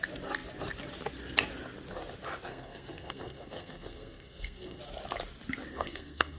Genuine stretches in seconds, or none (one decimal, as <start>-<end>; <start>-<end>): 0.0-2.5; 4.8-5.7